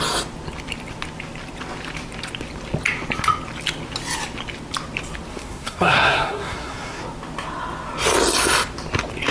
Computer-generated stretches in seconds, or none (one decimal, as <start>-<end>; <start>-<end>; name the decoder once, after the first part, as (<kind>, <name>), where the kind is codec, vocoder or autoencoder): 5.3-7.0 (codec, SNAC)